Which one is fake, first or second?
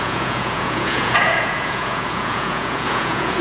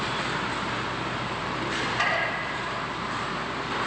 first